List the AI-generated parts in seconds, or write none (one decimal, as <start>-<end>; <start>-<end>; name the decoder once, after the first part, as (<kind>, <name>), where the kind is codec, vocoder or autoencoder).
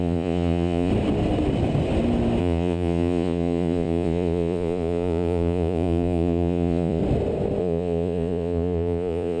0.0-0.9 (vocoder, Vocos); 2.4-7.0; 7.6-9.4